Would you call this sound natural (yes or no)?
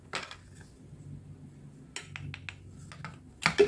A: yes